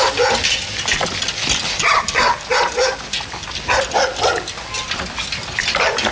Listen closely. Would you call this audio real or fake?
real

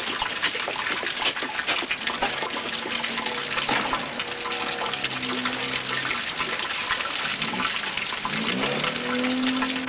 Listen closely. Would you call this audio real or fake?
real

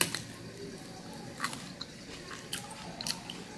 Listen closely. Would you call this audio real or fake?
real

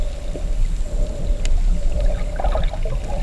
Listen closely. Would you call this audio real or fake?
real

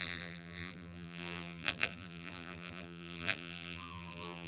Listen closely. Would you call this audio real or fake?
fake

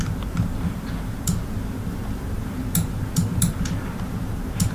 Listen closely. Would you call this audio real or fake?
fake